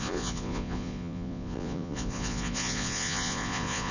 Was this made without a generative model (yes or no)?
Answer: no